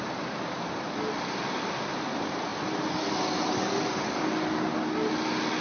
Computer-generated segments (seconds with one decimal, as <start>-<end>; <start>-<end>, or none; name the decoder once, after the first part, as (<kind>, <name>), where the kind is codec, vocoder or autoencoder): none